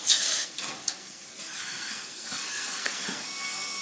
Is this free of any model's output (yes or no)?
no